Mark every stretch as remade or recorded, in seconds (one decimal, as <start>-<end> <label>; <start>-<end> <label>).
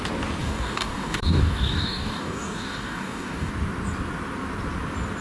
0.0-0.4 recorded; 0.4-3.5 remade; 3.5-5.2 recorded